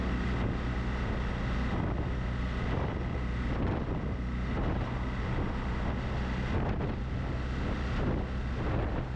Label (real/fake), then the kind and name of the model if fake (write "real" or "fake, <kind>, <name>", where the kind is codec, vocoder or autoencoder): real